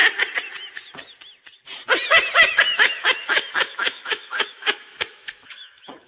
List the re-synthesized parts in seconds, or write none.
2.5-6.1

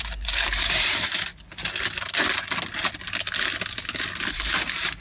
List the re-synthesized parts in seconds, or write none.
0.0-1.3; 4.3-5.0

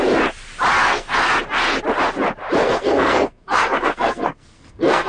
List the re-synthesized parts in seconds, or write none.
0.8-1.3; 2.6-5.1

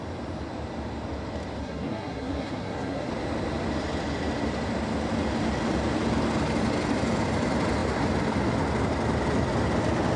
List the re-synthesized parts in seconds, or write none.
1.6-3.1

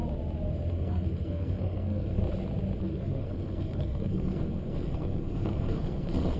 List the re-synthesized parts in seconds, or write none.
0.7-2.2; 2.8-6.4

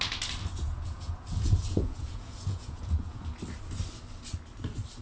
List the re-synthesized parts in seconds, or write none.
0.5-3.2